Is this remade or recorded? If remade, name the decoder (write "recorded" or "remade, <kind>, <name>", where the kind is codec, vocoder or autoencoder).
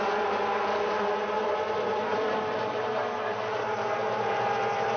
remade, vocoder, BigVGAN v2